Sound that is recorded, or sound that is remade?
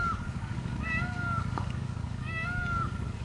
remade